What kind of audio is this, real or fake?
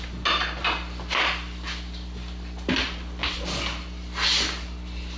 real